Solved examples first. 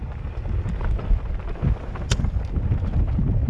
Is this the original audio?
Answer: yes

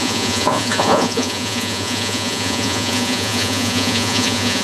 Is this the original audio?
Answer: no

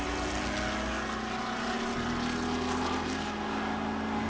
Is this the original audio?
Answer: yes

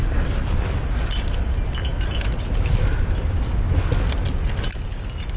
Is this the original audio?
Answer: yes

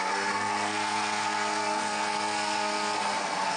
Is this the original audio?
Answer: no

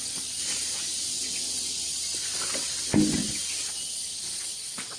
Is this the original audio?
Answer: yes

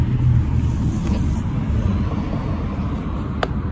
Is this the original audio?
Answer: yes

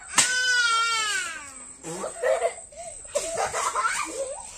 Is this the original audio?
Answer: yes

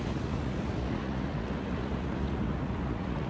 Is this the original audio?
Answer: no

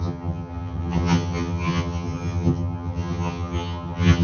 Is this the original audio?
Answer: no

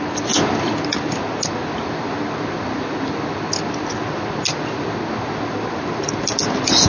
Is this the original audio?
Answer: yes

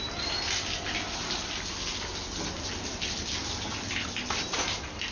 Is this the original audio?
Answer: yes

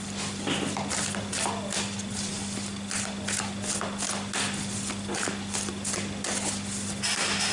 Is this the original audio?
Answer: yes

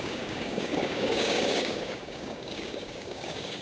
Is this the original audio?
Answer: no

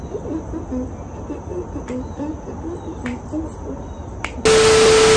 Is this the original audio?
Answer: yes